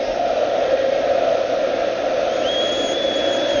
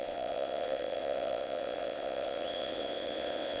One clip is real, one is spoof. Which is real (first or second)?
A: first